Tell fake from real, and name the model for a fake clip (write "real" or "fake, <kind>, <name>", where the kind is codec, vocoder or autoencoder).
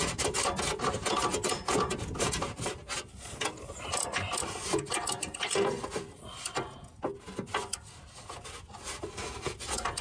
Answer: real